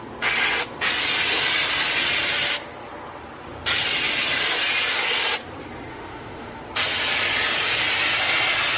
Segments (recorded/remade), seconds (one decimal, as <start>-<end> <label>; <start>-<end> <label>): 0.0-5.9 recorded; 5.9-6.6 remade; 6.6-8.8 recorded